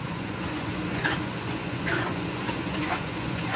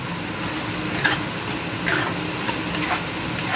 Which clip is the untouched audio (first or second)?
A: second